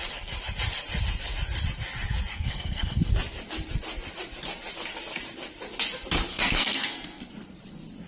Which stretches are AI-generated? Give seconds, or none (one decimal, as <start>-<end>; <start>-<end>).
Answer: 2.3-3.1; 6.3-7.3